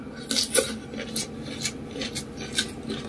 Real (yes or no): yes